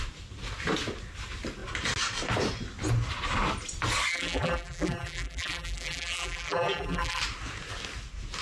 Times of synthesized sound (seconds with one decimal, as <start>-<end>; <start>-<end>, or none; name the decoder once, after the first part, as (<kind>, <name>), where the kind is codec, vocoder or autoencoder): 4.1-7.2 (vocoder, BigVGAN v2)